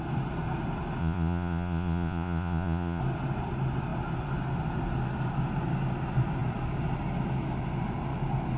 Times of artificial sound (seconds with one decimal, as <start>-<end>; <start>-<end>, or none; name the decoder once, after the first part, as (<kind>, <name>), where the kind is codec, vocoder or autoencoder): 1.0-3.0 (vocoder, Vocos)